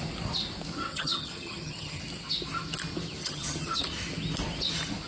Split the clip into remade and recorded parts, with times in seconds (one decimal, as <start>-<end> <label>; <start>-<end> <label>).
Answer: 0.0-0.9 recorded; 0.9-2.0 remade; 2.0-3.2 recorded; 3.2-3.8 remade; 3.8-5.1 recorded

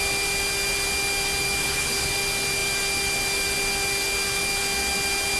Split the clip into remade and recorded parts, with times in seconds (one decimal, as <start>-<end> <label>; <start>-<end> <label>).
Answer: 0.0-1.6 recorded; 1.6-2.1 remade; 2.1-5.4 recorded